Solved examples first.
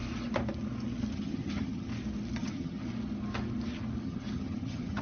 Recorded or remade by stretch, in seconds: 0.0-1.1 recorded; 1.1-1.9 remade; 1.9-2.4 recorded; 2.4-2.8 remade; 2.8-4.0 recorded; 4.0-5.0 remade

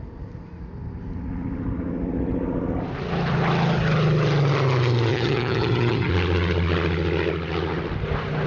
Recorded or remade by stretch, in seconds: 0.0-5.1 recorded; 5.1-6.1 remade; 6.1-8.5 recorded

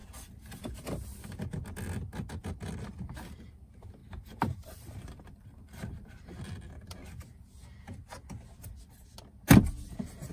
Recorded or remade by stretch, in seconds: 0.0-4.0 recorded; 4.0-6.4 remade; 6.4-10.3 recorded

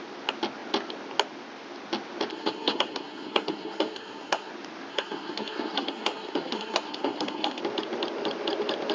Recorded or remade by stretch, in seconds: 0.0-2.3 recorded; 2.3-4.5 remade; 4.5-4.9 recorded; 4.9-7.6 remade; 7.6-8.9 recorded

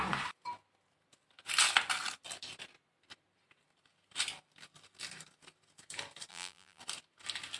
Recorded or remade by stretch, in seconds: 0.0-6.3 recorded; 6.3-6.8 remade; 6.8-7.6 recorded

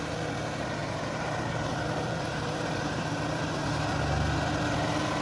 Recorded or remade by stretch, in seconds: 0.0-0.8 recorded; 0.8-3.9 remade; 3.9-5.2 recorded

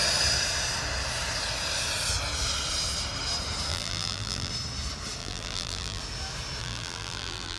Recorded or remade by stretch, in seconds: 0.0-3.7 recorded; 3.7-4.5 remade; 4.5-5.2 recorded; 5.2-6.0 remade; 6.0-6.6 recorded; 6.6-7.6 remade

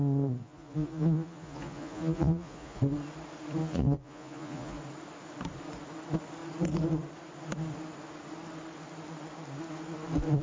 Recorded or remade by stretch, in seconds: 0.0-0.4 recorded; 0.4-2.8 remade; 2.8-3.6 recorded; 3.6-4.8 remade; 4.8-10.4 recorded